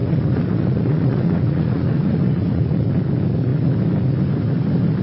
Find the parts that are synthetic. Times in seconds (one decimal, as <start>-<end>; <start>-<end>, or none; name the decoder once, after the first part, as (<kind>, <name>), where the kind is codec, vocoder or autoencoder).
0.0-2.9 (vocoder, Vocos)